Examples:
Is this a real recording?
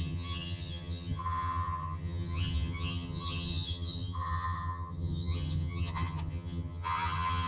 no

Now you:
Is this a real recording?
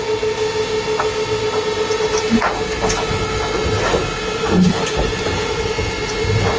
yes